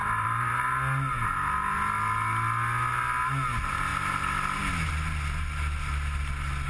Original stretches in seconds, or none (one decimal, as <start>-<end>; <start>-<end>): 0.7-6.7